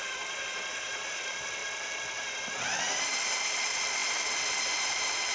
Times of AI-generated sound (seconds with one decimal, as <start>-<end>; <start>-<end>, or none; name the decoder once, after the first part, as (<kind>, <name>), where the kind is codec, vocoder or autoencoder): 0.0-1.6 (vocoder, BigVGAN v2); 2.6-5.3